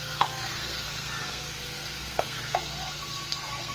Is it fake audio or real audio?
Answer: fake